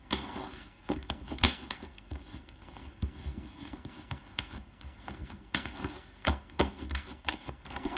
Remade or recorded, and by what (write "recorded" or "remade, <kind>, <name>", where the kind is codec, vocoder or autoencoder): remade, codec, SNAC